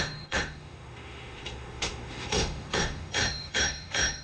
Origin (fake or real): fake